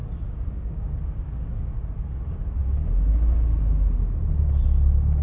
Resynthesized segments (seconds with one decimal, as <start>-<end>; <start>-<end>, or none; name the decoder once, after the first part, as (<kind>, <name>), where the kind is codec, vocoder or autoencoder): 0.0-1.9 (codec, DAC)